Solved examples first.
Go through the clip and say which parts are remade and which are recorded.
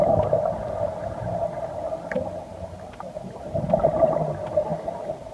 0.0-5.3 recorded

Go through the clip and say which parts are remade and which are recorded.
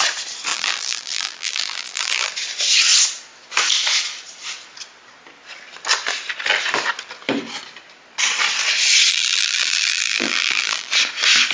0.0-0.5 recorded; 0.5-2.3 remade; 2.3-9.1 recorded; 9.1-10.9 remade; 10.9-11.5 recorded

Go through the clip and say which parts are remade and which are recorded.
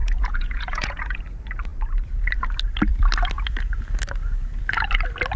0.0-1.2 remade; 1.2-5.4 recorded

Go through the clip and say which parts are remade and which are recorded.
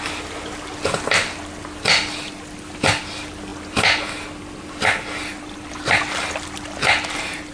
0.0-7.5 recorded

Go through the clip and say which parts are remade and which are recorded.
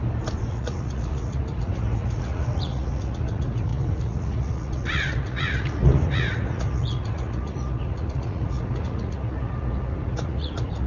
0.0-0.5 recorded; 0.5-10.9 remade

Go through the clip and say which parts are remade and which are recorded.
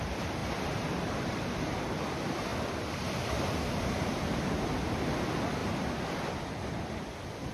0.0-7.5 recorded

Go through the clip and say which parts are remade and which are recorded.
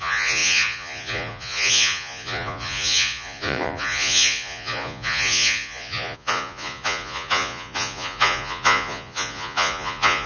0.0-10.3 remade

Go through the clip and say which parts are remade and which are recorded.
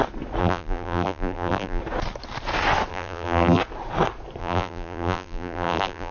0.0-0.4 recorded; 0.4-1.8 remade; 1.8-2.9 recorded; 2.9-3.6 remade; 3.6-4.4 recorded; 4.4-6.1 remade